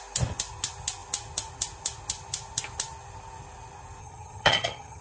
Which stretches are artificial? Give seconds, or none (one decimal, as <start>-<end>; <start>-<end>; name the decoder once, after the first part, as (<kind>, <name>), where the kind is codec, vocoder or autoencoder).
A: 4.0-5.0 (vocoder, HiFi-GAN)